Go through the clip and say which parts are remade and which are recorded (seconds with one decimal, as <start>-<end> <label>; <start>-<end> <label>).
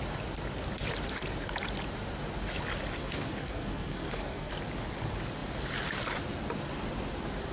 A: 0.0-3.0 recorded; 3.0-4.5 remade; 4.5-7.5 recorded